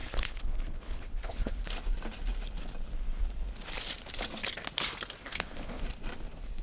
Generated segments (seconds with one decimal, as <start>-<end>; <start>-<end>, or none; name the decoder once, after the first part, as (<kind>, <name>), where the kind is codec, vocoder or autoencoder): 0.0-1.6 (codec, HILCodec); 5.2-5.8